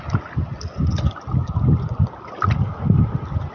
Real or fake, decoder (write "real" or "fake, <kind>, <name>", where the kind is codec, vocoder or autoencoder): real